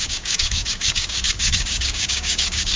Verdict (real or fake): fake